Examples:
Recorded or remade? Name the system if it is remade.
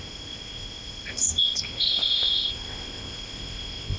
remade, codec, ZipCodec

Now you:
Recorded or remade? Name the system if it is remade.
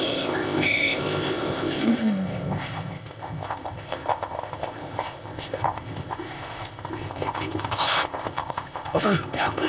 remade, codec, ZipCodec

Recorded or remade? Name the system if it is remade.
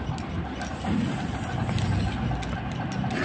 recorded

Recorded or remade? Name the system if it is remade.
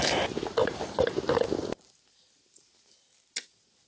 recorded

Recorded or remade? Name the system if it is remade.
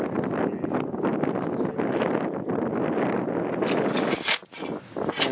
recorded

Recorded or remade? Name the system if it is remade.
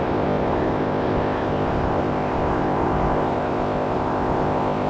remade, codec, ZipCodec